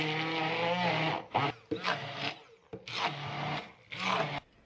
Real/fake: real